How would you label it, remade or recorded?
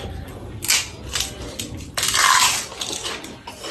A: recorded